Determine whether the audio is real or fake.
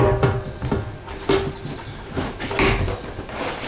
real